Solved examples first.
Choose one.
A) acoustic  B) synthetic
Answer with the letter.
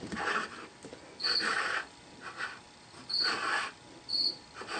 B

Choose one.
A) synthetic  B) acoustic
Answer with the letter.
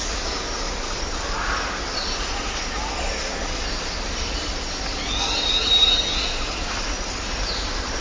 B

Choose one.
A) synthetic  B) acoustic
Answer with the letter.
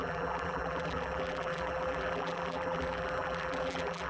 A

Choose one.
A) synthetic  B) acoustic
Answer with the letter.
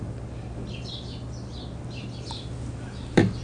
B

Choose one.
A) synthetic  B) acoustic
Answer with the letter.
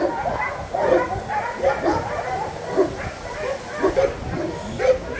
B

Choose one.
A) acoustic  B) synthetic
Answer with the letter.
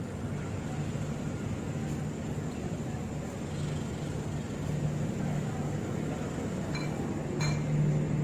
A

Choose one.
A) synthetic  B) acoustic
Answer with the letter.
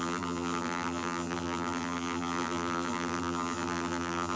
A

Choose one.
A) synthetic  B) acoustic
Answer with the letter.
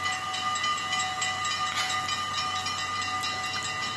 B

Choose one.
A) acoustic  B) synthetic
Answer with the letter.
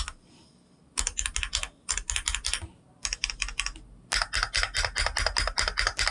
A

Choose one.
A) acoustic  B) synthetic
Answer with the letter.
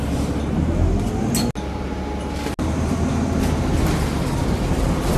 A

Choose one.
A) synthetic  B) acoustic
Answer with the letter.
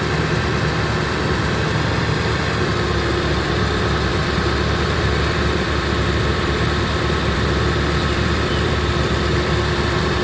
A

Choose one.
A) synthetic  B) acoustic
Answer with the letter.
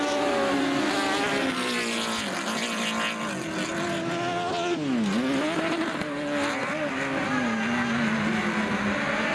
B